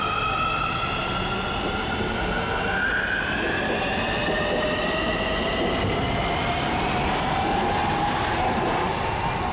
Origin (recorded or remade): recorded